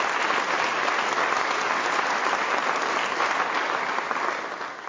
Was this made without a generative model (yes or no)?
yes